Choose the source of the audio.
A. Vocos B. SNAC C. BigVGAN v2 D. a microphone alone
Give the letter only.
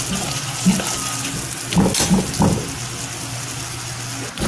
D